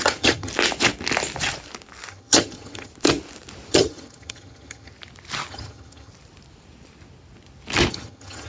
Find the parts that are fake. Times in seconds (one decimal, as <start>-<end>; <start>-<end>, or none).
0.0-0.5; 2.1-2.9; 3.7-4.9; 5.5-6.1; 7.9-8.5